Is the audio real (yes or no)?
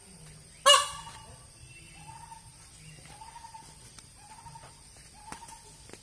yes